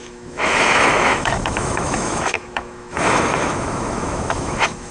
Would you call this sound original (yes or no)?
no